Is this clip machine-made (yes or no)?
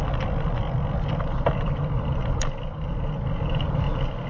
no